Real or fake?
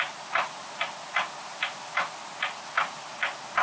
real